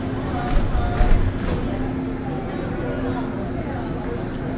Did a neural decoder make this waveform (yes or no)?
no